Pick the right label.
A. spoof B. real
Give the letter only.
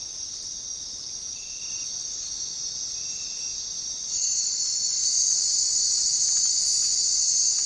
B